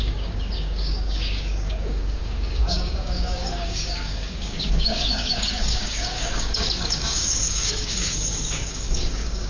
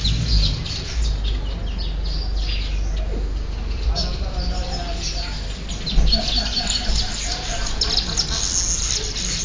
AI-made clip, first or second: first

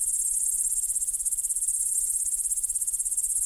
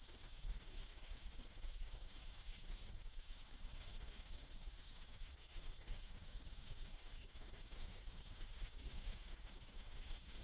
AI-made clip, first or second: second